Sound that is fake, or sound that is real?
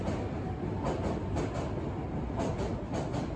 real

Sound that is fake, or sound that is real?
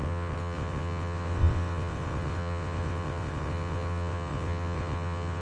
fake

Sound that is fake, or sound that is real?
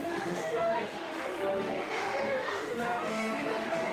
fake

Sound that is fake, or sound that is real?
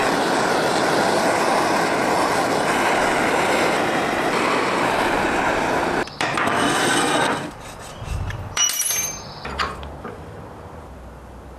fake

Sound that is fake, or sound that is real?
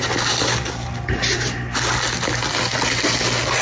real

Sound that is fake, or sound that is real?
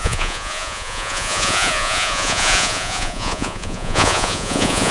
fake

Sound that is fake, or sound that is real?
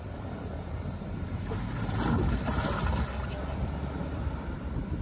real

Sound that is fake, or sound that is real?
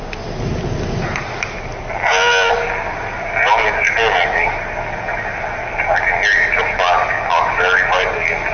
real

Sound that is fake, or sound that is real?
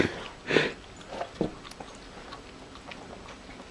real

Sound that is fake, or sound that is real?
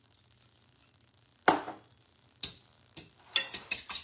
real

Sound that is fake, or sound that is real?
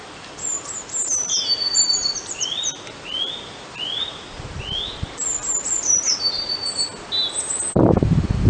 fake